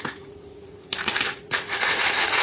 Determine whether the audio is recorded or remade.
remade